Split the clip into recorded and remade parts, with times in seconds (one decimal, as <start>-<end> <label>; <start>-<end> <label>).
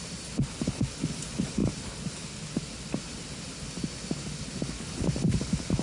0.0-5.8 recorded